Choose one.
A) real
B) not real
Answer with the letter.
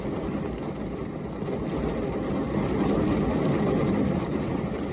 A